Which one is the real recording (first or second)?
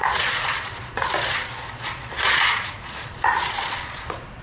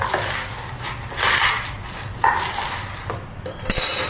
second